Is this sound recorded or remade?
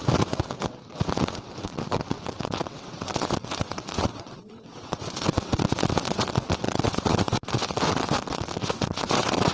remade